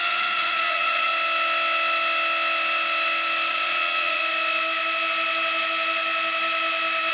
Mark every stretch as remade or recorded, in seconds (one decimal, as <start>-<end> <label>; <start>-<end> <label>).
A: 0.0-1.1 remade; 1.1-3.5 recorded; 3.5-4.2 remade; 4.2-7.1 recorded